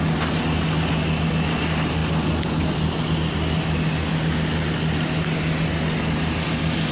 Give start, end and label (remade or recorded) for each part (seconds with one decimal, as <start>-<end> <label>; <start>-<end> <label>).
0.0-6.9 recorded